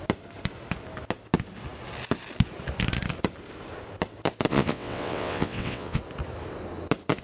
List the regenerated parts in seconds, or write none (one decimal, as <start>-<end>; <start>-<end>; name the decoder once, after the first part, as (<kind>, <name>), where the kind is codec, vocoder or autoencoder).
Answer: 4.5-6.0 (vocoder, WaveNeXt)